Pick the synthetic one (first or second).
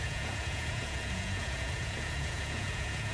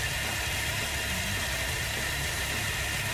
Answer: first